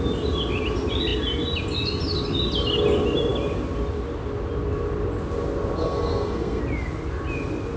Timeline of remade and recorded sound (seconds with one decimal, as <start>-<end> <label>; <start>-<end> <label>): 0.0-5.8 recorded; 5.8-6.6 remade; 6.6-7.8 recorded